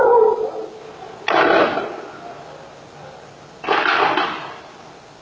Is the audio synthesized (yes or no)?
no